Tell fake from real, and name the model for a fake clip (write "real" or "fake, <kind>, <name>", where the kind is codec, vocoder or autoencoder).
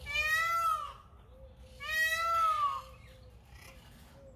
real